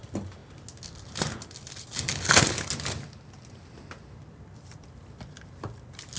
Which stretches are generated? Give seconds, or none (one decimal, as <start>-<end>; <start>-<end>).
0.0-0.4; 4.1-6.2